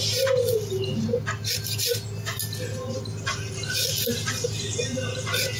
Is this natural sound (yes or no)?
yes